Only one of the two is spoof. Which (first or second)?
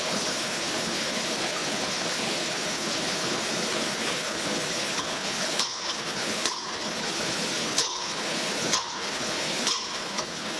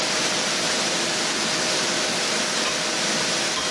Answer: first